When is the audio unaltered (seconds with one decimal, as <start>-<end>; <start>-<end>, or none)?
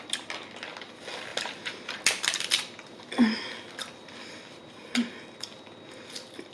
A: 0.0-1.3; 4.2-6.5